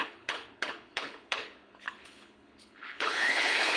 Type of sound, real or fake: fake